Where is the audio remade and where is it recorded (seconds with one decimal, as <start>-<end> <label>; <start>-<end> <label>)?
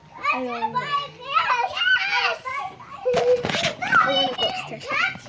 0.0-2.3 recorded; 2.3-3.0 remade; 3.0-5.3 recorded